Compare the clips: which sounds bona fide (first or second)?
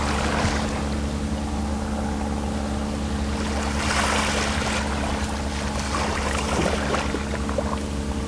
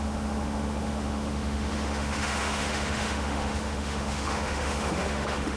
first